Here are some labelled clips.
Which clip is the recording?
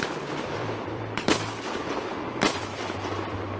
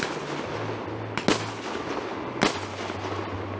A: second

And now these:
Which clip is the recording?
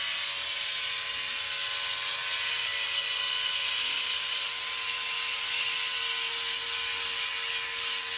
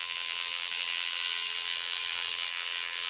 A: first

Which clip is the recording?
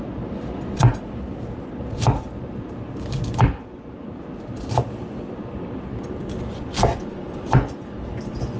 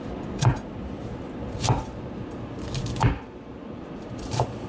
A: first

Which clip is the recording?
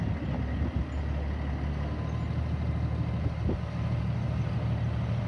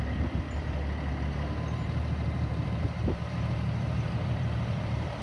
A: first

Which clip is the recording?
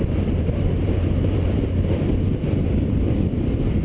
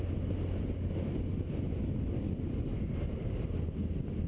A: second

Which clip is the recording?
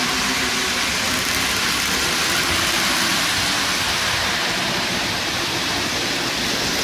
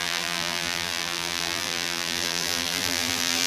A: first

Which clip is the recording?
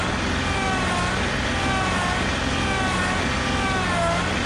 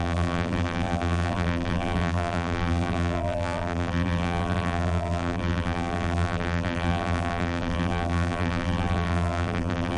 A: first